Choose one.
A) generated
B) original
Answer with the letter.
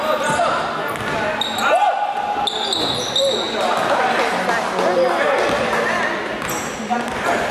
B